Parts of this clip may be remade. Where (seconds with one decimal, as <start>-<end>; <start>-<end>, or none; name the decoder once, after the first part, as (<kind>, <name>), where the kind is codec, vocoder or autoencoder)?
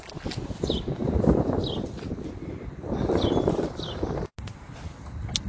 none